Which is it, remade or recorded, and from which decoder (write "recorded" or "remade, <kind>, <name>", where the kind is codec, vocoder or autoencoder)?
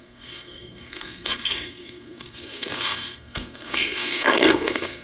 remade, codec, SNAC